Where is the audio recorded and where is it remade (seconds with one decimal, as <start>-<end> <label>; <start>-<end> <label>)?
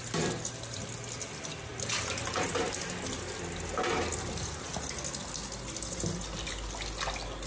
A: 0.0-7.5 recorded